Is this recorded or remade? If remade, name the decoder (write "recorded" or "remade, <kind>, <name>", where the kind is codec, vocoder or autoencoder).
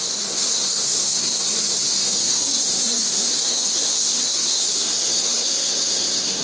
remade, codec, SNAC